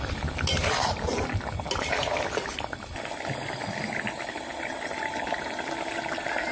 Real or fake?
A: real